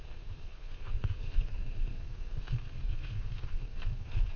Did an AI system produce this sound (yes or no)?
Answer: yes